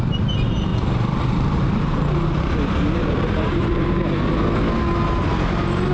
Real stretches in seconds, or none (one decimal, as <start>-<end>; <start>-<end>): 0.0-0.7; 4.2-5.9